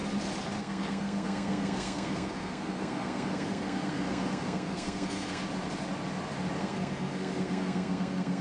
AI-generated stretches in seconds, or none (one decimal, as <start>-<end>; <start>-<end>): 0.6-5.4; 6.6-8.4